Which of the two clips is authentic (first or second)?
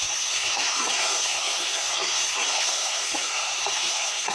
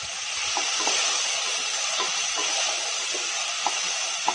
second